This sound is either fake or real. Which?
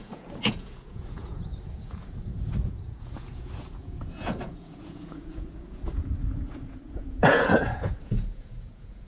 fake